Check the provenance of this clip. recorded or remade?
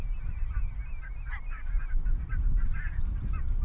recorded